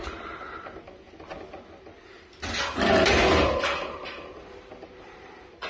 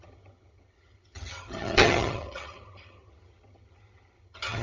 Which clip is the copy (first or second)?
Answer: second